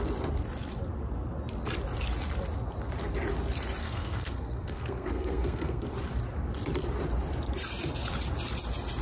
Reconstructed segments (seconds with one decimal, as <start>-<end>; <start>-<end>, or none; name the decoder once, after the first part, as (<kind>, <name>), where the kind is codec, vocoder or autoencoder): 3.8-5.9 (codec, SNAC)